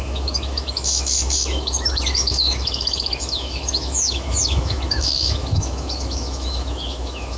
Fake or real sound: fake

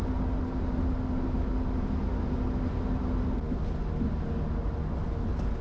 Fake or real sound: real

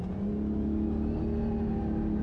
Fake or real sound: real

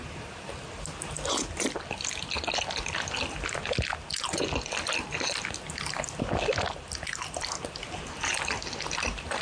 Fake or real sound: real